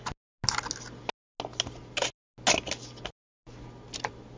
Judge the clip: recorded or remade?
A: recorded